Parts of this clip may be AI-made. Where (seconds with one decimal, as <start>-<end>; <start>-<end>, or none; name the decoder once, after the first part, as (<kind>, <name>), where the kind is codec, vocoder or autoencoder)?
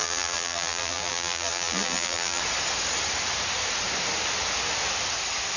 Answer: 0.0-2.4 (vocoder, BigVGAN v2)